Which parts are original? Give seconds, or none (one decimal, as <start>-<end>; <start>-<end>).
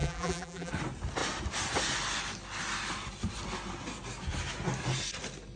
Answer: 0.7-5.6